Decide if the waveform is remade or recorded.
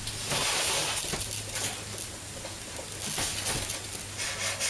recorded